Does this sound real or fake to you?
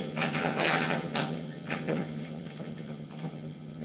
fake